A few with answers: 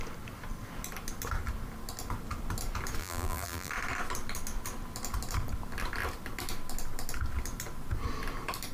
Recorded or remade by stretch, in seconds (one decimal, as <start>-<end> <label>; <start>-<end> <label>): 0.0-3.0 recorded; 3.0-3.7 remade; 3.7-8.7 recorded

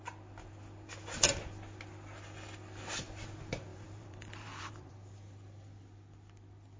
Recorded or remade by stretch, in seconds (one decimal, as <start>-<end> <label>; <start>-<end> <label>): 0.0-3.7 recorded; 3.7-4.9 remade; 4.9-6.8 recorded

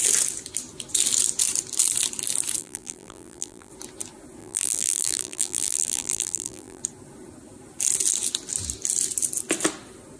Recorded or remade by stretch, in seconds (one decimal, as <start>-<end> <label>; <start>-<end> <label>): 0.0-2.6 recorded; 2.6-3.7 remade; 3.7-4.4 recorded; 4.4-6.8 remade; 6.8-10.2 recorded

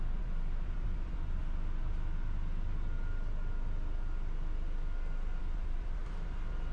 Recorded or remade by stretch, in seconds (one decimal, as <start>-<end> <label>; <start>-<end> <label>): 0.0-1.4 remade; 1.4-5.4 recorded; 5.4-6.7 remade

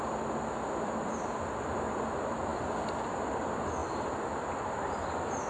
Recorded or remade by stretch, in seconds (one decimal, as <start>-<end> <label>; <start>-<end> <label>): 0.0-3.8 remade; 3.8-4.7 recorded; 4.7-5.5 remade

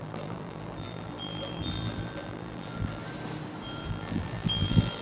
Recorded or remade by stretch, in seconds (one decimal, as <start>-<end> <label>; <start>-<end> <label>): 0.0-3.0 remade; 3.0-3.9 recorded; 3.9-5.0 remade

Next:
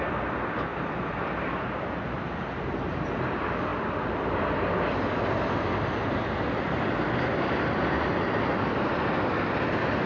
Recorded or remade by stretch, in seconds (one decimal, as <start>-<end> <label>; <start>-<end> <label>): 0.0-10.1 recorded